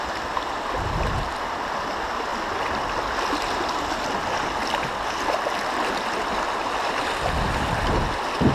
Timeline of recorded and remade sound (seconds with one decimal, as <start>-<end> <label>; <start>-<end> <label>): 0.0-8.5 recorded